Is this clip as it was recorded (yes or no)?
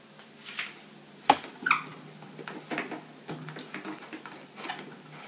yes